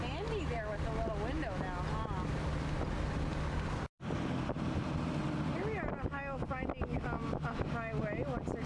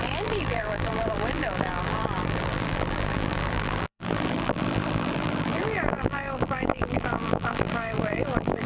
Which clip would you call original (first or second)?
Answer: first